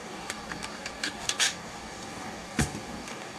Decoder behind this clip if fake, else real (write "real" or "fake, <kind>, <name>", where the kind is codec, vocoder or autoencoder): fake, codec, DAC